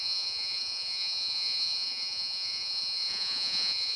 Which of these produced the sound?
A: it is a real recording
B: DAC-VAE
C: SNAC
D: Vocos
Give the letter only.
D